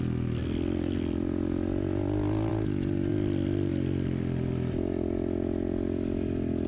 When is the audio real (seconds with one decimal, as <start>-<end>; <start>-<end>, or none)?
0.0-6.7